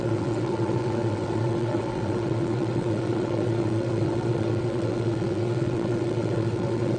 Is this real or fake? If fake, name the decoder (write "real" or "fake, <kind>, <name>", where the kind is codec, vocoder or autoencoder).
fake, vocoder, WaveNeXt